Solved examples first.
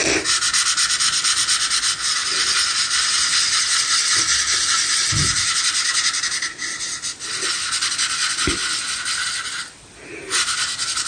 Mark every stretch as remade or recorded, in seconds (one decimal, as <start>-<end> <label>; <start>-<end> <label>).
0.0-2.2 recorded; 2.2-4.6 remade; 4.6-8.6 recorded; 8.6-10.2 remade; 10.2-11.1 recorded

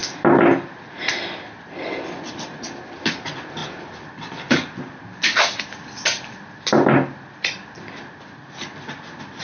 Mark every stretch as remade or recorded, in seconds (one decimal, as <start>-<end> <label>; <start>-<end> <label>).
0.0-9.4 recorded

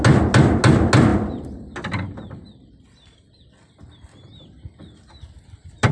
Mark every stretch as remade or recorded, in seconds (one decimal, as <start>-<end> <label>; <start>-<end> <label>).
0.0-5.9 recorded